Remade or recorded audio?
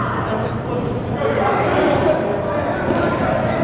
recorded